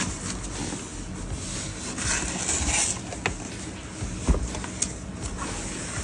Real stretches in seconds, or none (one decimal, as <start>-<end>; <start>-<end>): 0.0-6.0